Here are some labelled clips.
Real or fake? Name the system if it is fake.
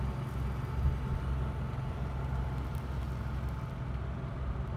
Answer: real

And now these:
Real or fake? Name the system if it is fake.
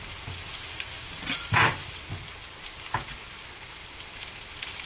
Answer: real